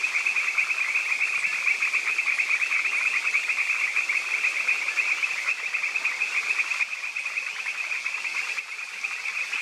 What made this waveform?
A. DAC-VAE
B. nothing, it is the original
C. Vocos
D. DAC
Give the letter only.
B